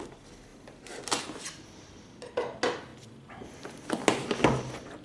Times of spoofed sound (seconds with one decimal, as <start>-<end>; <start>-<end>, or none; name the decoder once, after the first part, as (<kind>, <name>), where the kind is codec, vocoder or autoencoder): none